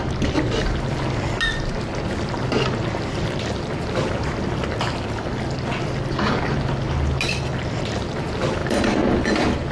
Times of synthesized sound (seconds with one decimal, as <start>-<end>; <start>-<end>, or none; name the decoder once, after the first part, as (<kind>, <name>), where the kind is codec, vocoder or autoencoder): none